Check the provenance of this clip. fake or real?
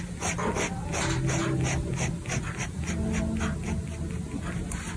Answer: real